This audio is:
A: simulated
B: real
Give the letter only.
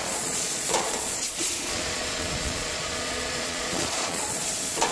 A